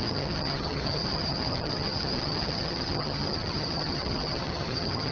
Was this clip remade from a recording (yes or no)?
yes